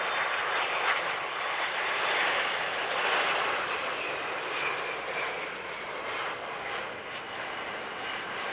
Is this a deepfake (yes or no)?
no